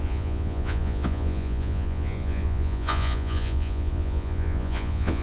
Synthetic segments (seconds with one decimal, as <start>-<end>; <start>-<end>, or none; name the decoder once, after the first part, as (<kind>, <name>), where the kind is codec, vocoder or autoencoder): 0.0-5.2 (vocoder, Vocos)